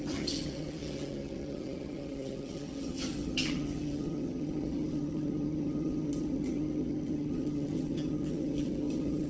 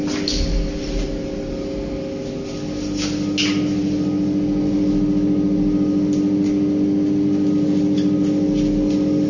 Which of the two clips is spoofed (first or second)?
first